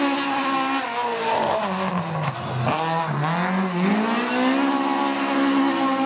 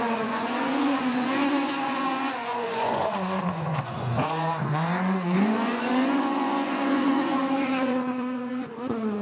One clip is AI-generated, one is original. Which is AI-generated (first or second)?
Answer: second